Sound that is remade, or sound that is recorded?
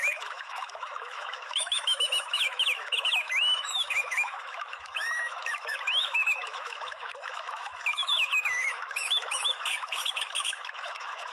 remade